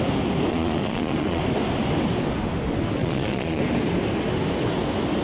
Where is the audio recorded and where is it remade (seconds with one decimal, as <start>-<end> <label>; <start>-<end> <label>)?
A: 0.0-0.5 recorded; 0.5-1.4 remade; 1.4-3.0 recorded; 3.0-3.6 remade; 3.6-5.2 recorded